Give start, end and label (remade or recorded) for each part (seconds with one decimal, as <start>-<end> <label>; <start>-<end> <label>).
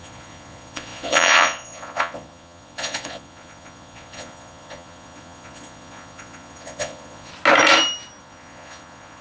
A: 0.0-7.3 remade; 7.3-8.2 recorded; 8.2-9.2 remade